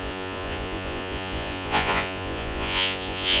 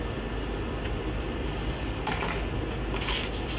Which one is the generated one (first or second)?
first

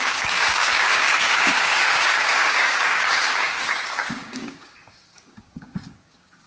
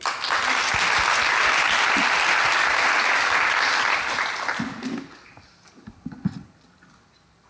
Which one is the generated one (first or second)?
first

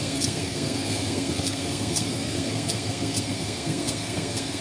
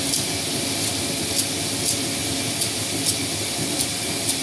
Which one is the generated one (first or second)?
first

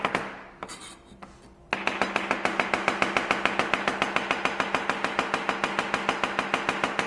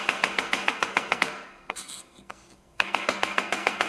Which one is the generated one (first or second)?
second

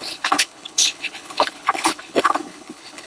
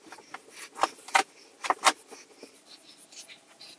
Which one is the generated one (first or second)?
first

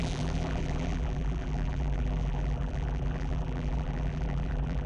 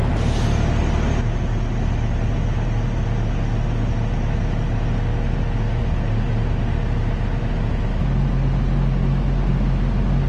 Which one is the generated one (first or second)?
first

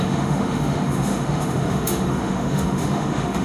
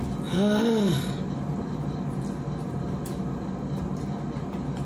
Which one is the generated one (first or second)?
first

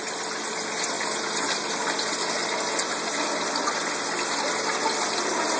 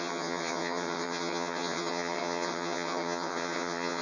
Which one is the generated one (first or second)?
second